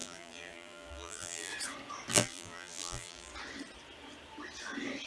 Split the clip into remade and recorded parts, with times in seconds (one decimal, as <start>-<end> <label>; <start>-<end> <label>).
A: 0.0-1.5 remade; 1.5-2.1 recorded; 2.1-3.3 remade; 3.3-5.1 recorded